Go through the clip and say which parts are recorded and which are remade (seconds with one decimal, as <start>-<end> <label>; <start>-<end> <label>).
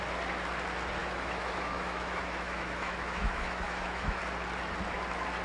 0.0-1.0 recorded; 1.0-4.2 remade; 4.2-5.4 recorded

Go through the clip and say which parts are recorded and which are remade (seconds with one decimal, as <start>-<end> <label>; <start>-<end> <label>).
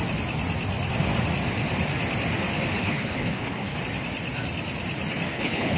0.0-2.7 recorded; 2.7-3.8 remade; 3.8-5.3 recorded; 5.3-5.8 remade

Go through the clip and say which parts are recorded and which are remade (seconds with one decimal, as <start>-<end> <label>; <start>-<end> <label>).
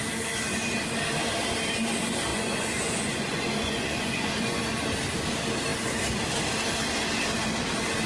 0.0-2.3 recorded; 2.3-4.6 remade; 4.6-8.1 recorded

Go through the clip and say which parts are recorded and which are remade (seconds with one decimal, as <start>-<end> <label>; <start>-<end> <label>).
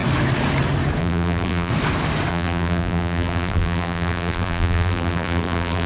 0.0-1.0 recorded; 1.0-1.7 remade; 1.7-2.3 recorded; 2.3-5.9 remade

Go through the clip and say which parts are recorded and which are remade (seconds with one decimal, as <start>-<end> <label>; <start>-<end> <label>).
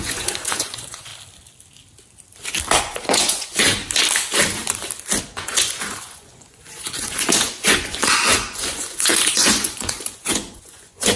0.0-1.1 remade; 1.1-2.8 recorded; 2.8-3.8 remade; 3.8-5.2 recorded; 5.2-11.2 remade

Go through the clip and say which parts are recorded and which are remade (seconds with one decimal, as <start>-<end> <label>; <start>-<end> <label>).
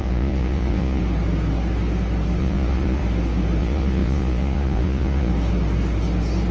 0.0-1.0 remade; 1.0-2.4 recorded; 2.4-3.0 remade; 3.0-3.6 recorded; 3.6-5.3 remade; 5.3-6.5 recorded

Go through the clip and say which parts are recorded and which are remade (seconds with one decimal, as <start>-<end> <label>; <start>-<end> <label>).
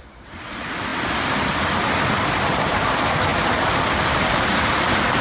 0.0-5.2 remade